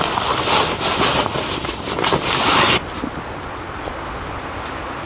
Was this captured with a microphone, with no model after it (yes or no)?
yes